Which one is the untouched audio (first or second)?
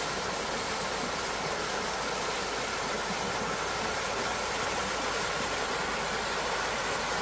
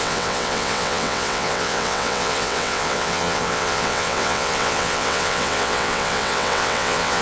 first